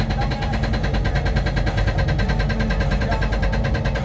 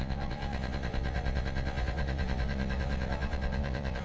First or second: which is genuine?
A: first